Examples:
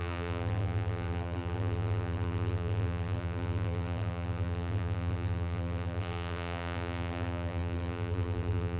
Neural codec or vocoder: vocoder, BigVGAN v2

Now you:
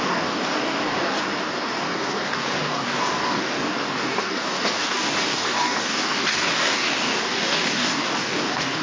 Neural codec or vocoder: codec, DAC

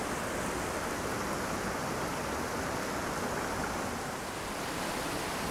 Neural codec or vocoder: none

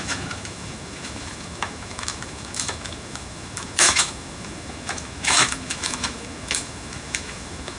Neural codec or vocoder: autoencoder, DAC-VAE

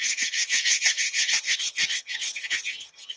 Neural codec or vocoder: vocoder, HiFi-GAN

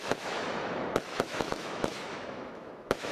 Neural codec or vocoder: autoencoder, DAC-VAE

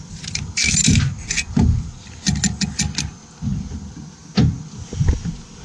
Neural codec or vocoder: none